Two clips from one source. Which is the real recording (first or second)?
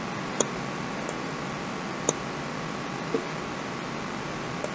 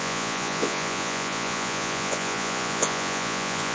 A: first